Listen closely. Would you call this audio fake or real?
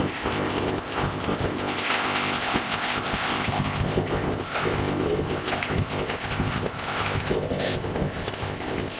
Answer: fake